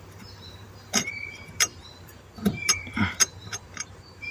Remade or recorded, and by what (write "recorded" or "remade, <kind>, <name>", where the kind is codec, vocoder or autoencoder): remade, vocoder, BigVGAN v2